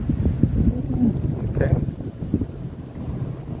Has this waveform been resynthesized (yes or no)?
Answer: no